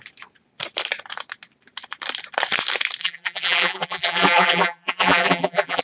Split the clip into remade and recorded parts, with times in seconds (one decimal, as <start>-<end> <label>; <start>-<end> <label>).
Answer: 0.0-3.0 recorded; 3.0-5.8 remade